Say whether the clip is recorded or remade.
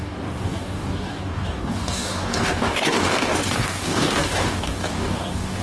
remade